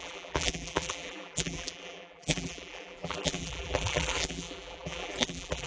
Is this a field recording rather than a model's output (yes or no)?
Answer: no